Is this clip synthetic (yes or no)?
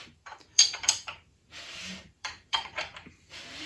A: yes